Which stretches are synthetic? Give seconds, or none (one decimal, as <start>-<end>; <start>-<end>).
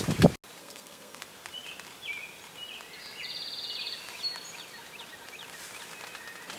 0.6-1.2